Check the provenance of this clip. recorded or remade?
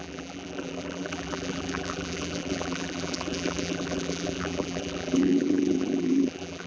remade